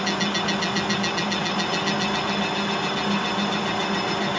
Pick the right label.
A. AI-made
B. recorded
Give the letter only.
B